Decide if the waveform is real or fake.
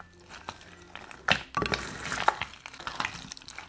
real